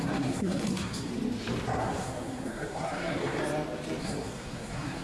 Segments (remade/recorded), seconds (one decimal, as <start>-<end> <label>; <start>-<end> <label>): 0.0-1.1 remade; 1.1-1.8 recorded; 1.8-3.4 remade; 3.4-4.0 recorded; 4.0-5.0 remade